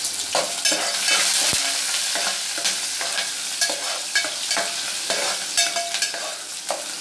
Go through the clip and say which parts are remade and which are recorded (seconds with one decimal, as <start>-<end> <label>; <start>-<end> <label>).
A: 0.0-7.0 recorded